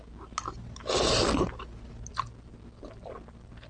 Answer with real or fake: real